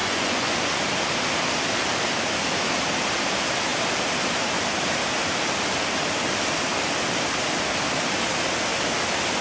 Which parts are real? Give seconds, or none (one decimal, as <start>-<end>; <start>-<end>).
0.8-9.4